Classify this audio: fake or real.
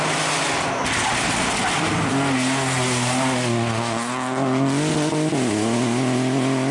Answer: real